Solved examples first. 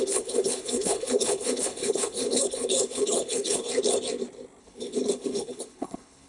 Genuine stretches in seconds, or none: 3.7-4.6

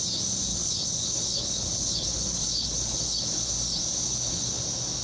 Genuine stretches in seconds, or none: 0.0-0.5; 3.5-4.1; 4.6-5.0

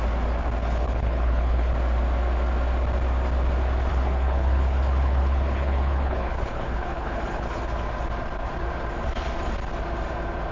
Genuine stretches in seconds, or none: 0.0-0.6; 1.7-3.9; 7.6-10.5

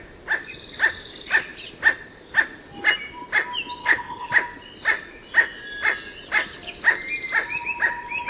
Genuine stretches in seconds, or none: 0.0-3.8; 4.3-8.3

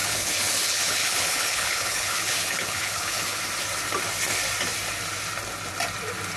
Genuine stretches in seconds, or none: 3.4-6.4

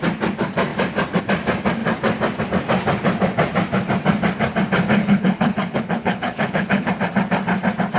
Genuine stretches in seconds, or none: 0.0-5.0; 6.9-8.0